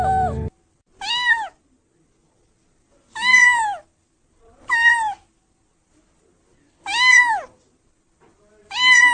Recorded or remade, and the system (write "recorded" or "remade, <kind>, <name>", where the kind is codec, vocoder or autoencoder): recorded